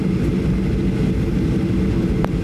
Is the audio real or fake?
real